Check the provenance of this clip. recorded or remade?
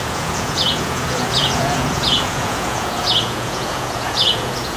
remade